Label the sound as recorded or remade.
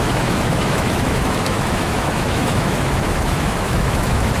remade